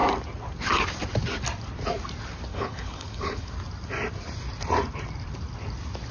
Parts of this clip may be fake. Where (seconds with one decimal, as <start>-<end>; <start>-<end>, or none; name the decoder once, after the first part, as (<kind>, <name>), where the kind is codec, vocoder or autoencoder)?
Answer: 2.5-3.5 (codec, HILCodec)